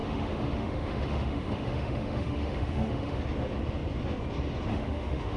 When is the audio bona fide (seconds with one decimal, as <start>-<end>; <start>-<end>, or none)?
3.2-4.7